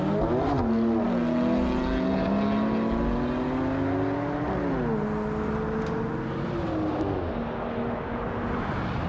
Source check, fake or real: real